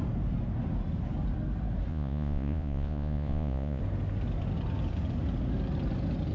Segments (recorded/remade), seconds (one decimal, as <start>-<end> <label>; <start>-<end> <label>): 0.0-1.9 recorded; 1.9-3.8 remade; 3.8-6.3 recorded